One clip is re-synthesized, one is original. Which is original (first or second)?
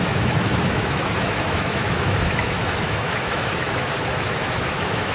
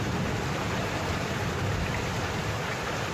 second